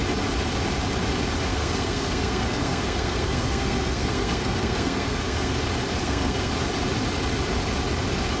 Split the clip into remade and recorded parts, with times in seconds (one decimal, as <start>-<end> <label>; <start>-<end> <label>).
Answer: 0.0-1.5 recorded; 1.5-5.5 remade; 5.5-6.0 recorded; 6.0-6.5 remade; 6.5-8.4 recorded